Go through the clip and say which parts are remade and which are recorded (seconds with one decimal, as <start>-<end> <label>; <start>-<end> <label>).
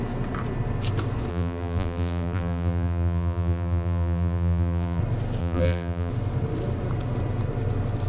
0.0-1.3 recorded; 1.3-5.0 remade; 5.0-5.4 recorded; 5.4-6.1 remade; 6.1-8.1 recorded